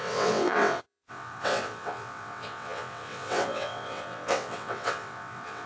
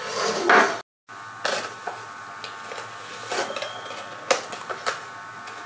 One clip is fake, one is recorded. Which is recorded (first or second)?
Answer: second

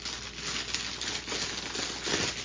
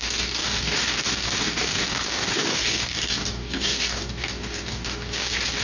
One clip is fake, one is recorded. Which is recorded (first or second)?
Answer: first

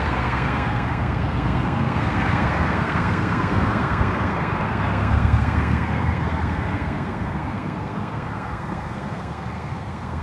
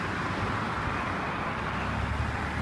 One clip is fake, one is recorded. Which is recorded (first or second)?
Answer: second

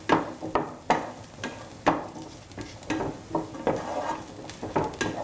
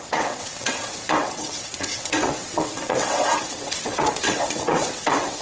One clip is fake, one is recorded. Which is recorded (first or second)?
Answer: first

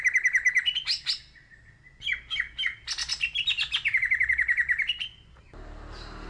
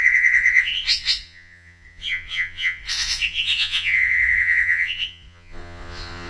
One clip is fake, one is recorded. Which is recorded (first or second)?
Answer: first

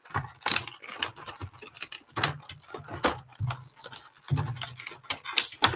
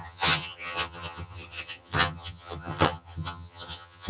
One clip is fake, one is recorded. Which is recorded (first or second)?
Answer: first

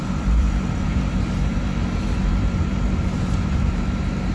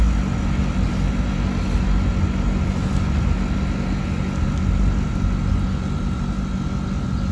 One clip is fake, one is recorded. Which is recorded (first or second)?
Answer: second